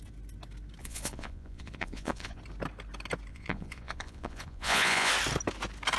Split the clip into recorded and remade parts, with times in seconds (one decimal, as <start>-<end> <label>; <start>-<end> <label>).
0.0-0.8 recorded; 0.8-2.4 remade; 2.4-3.3 recorded; 3.3-5.1 remade; 5.1-6.0 recorded